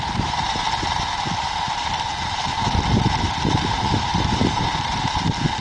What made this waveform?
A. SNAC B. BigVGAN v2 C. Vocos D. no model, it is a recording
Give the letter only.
B